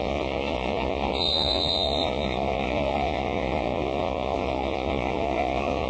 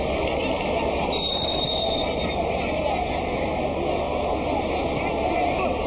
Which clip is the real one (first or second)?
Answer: second